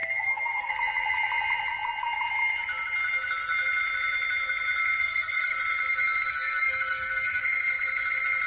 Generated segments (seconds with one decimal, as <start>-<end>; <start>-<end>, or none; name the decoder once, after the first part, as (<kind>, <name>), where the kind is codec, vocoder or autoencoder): 0.0-0.7 (codec, SNAC); 5.0-5.6; 6.3-7.4